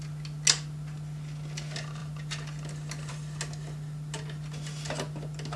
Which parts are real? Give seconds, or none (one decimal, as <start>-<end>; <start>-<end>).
0.0-5.6